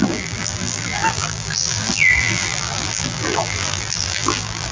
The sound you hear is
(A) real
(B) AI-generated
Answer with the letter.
B